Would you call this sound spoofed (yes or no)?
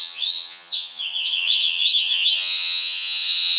yes